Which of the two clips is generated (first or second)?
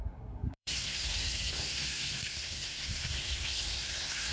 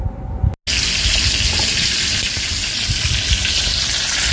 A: first